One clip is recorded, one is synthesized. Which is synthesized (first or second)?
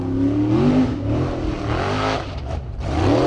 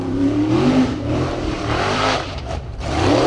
second